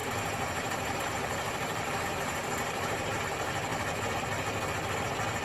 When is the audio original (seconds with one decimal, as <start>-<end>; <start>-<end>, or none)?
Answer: 3.2-5.4